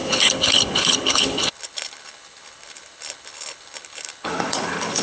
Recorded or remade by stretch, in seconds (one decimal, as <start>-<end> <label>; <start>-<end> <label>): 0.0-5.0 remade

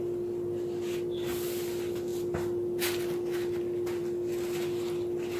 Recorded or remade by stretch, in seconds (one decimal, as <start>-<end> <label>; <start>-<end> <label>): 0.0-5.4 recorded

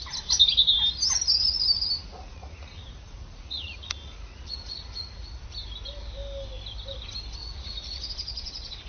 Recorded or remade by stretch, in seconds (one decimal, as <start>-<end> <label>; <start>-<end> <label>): 0.0-2.1 recorded; 2.1-5.4 remade; 5.4-7.4 recorded; 7.4-8.1 remade; 8.1-8.9 recorded